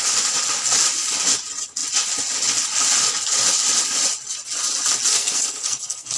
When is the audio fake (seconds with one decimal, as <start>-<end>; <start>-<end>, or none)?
5.1-6.2